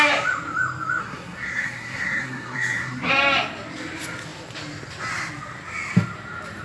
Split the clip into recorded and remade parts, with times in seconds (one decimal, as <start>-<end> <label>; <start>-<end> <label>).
0.0-1.0 recorded; 1.0-3.1 remade; 3.1-6.6 recorded